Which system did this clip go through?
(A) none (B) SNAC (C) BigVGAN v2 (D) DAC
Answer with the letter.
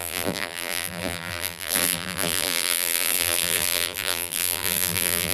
C